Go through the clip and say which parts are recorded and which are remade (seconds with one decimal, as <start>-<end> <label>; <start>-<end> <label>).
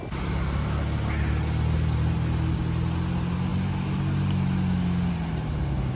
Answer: 0.0-6.0 recorded